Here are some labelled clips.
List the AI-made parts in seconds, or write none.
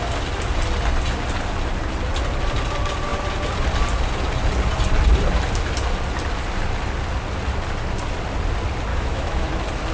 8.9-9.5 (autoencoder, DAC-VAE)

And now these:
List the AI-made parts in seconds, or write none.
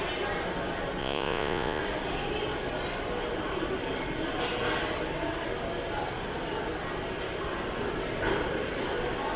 1.0-1.8 (vocoder, Vocos)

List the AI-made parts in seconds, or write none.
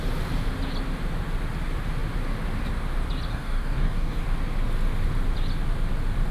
3.3-4.2 (codec, DAC)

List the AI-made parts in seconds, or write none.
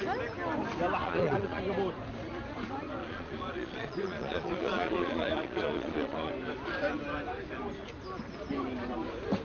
1.0-1.6 (vocoder, Vocos); 3.0-6.3